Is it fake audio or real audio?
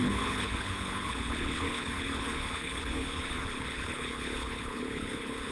fake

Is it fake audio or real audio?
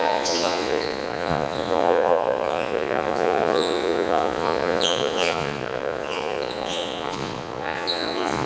fake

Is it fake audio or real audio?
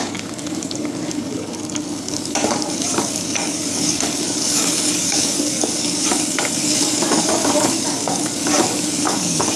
fake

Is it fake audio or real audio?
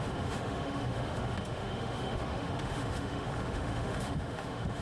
fake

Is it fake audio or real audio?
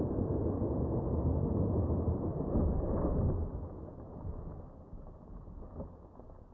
real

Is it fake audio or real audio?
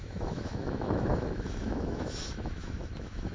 fake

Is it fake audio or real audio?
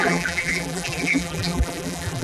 fake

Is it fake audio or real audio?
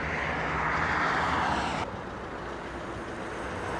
real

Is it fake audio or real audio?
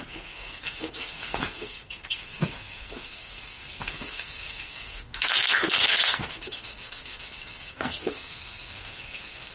fake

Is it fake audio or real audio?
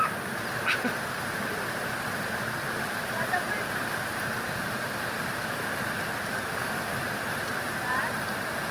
fake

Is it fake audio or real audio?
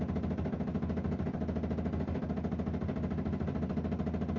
real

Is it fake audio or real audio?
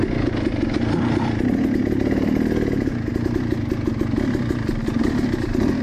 real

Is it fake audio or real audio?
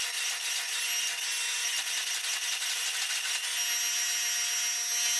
real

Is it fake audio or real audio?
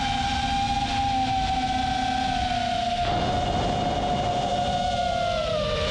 real